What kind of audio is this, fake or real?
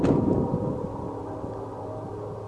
fake